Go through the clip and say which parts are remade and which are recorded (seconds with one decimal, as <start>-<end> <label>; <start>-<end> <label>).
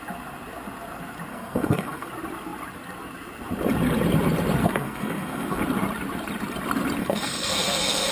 0.0-1.3 recorded; 1.3-2.1 remade; 2.1-4.6 recorded; 4.6-5.6 remade; 5.6-7.0 recorded; 7.0-8.1 remade